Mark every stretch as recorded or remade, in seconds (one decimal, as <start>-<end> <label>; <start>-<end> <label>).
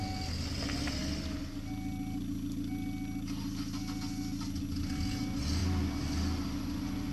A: 0.0-7.1 recorded